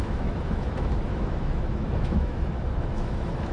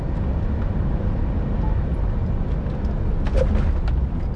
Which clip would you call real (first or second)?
second